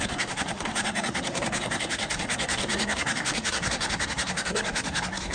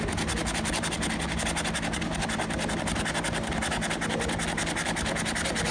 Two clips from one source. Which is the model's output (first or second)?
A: first